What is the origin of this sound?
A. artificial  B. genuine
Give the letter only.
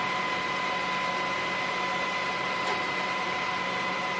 B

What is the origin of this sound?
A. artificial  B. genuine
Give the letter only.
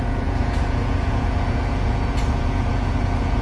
A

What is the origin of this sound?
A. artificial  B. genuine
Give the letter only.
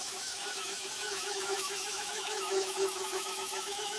A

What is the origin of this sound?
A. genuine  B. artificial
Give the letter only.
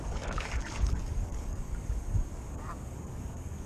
B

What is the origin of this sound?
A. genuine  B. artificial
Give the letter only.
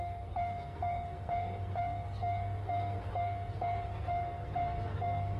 B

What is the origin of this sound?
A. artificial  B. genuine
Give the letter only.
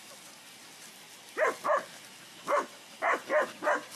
B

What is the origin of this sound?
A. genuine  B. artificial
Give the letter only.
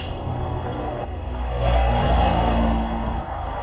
B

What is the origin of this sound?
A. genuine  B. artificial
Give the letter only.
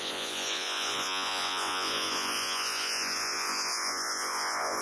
B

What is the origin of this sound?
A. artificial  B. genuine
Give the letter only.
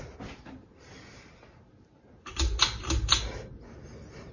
B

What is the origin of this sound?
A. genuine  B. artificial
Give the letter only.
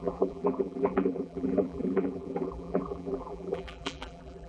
B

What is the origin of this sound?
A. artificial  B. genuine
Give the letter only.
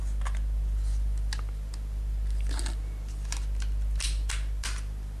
B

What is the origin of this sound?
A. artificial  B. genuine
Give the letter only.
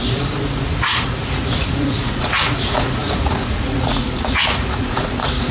A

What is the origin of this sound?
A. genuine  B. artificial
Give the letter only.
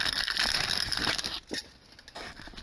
A